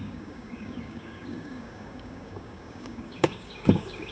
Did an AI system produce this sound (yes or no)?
yes